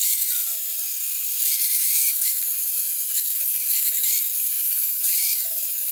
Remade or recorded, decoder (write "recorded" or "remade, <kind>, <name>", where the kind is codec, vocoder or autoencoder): remade, codec, SNAC